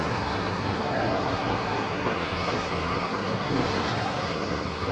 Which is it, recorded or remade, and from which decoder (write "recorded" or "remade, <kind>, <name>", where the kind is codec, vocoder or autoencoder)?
remade, codec, SNAC